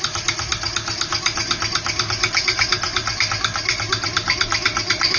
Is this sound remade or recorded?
recorded